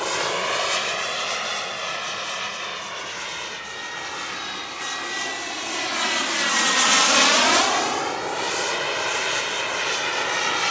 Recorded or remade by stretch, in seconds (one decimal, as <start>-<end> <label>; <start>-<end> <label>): 0.0-10.7 recorded